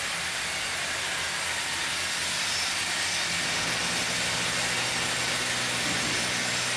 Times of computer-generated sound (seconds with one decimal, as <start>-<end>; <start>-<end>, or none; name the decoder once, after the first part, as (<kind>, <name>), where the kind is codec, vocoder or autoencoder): 2.2-3.8 (vocoder, BigVGAN v2)